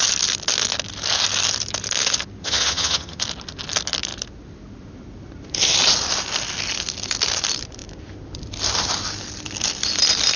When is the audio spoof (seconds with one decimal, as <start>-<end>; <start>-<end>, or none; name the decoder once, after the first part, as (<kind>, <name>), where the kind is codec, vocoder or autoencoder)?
2.4-3.2 (vocoder, HiFi-GAN)